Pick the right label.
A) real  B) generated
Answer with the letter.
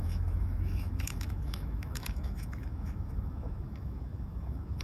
B